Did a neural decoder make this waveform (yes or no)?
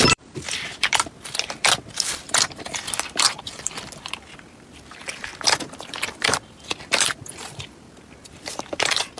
yes